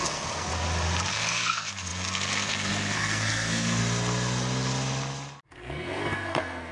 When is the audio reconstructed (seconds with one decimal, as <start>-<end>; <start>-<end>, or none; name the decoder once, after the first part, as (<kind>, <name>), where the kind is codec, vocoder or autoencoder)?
0.0-0.5 (codec, SNAC); 1.1-3.8; 5.4-6.7